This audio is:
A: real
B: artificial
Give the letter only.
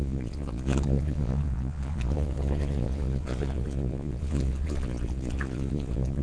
B